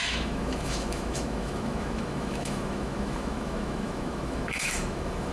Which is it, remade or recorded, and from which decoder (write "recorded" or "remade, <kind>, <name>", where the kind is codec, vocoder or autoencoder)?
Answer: remade, autoencoder, DAC-VAE